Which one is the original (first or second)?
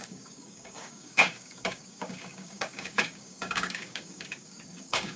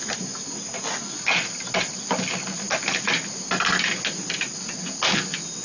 second